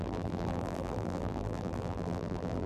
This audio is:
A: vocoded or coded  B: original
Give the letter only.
A